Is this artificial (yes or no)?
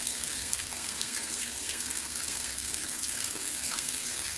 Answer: yes